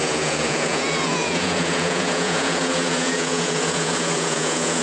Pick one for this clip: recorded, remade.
remade